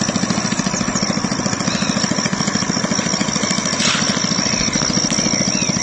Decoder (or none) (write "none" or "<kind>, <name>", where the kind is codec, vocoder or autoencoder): none